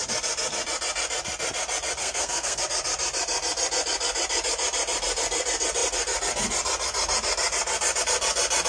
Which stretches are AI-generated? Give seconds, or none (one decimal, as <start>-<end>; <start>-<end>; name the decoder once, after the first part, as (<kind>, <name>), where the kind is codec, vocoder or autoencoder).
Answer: 2.0-2.6 (codec, SNAC)